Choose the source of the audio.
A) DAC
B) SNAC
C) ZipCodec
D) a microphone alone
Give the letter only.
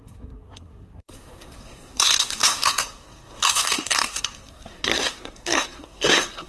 B